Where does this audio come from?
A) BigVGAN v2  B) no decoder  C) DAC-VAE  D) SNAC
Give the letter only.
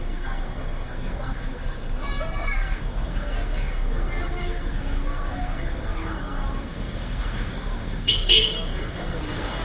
D